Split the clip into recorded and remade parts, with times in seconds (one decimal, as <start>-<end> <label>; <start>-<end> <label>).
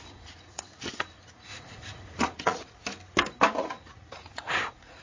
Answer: 0.0-2.8 remade; 2.8-3.5 recorded; 3.5-5.0 remade